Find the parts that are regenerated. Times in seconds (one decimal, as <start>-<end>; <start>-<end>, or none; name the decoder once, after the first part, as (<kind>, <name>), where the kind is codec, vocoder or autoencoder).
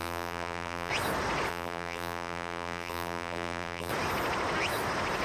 0.0-0.9 (vocoder, BigVGAN v2); 1.5-3.9